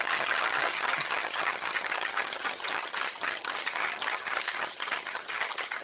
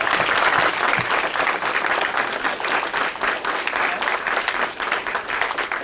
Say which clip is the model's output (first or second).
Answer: first